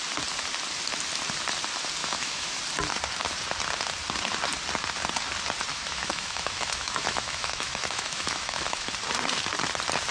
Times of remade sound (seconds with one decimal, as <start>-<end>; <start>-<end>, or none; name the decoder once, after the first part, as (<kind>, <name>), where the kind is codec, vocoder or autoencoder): 2.0-2.6 (autoencoder, DAC-VAE); 5.7-8.9